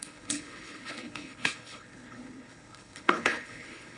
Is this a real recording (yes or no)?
no